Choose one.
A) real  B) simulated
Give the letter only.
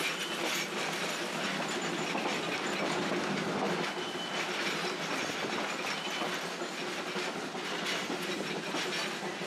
A